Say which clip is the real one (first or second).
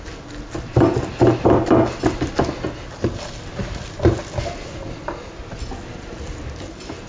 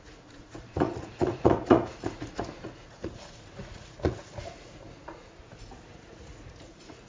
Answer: first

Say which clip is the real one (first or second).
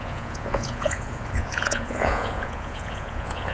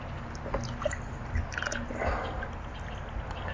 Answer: second